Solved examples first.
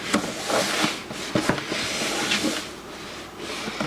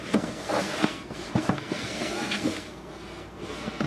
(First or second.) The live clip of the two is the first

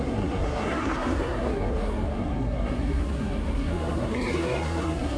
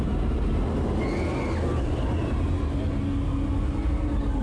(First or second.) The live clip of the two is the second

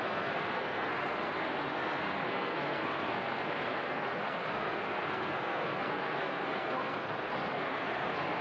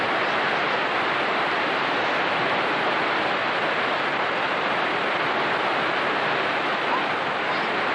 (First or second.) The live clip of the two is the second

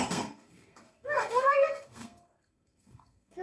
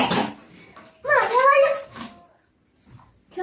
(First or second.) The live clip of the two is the second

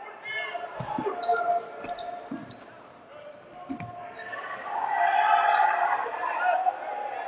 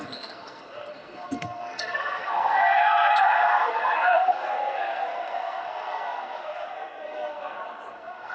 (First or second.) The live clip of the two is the first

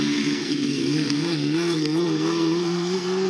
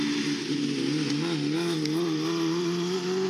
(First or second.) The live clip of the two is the second